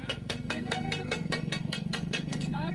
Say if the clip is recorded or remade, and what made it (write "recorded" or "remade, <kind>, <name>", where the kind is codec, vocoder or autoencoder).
remade, codec, SNAC